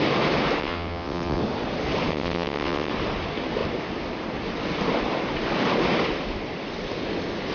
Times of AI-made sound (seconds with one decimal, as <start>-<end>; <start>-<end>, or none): 0.6-1.4; 2.1-2.9